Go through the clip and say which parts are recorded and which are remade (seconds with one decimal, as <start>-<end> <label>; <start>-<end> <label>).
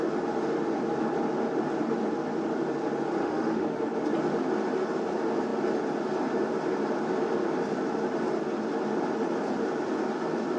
0.0-3.2 recorded; 3.2-3.8 remade; 3.8-10.6 recorded